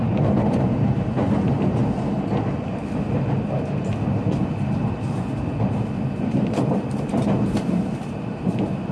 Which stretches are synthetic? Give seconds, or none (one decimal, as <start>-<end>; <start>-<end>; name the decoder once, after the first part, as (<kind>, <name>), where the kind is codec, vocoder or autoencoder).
0.0-1.8 (vocoder, BigVGAN v2); 6.2-8.9

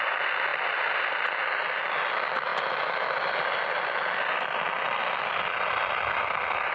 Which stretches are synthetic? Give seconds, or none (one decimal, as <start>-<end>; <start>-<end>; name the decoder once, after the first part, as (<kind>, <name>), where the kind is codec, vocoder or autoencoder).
none